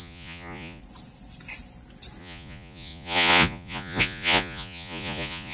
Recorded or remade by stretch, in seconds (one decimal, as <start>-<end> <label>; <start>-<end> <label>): 0.0-0.8 remade; 0.8-2.2 recorded; 2.2-5.5 remade